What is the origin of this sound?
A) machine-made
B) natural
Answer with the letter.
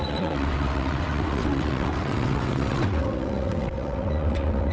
A